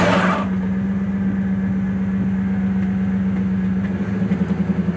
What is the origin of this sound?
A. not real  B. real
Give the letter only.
B